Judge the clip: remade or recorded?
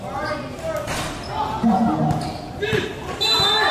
recorded